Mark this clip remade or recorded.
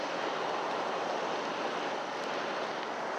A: recorded